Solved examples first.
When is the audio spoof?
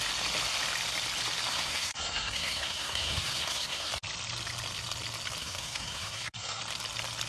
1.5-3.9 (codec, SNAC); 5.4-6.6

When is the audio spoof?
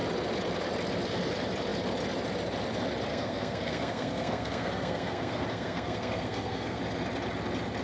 3.1-6.8 (codec, SNAC)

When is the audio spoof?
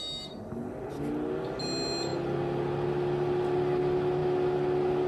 none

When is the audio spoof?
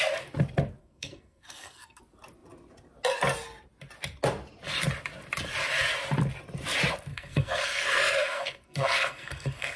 0.8-2.0 (codec, SNAC); 7.1-9.8